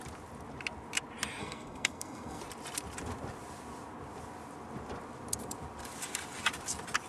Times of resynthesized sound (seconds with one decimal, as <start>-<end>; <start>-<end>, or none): 1.4-2.4